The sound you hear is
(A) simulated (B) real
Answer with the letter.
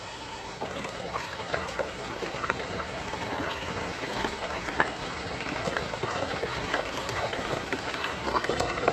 A